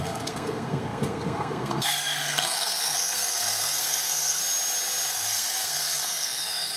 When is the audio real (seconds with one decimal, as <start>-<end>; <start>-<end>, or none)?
4.4-5.1